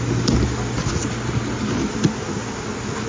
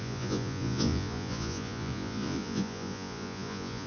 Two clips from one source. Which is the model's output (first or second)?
second